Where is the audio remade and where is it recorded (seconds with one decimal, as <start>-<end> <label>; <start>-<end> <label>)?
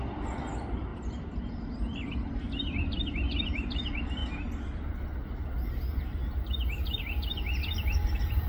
0.0-1.9 remade; 1.9-3.1 recorded; 3.1-4.2 remade; 4.2-7.0 recorded; 7.0-8.5 remade